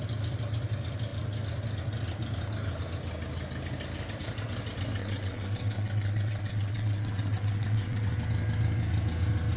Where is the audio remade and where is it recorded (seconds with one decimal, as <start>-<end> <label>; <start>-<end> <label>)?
0.0-5.0 recorded; 5.0-8.1 remade; 8.1-9.6 recorded